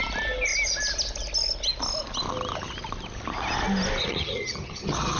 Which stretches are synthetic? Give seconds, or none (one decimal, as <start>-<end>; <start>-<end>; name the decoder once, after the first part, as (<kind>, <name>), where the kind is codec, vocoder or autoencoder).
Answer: 4.0-5.2 (vocoder, HiFi-GAN)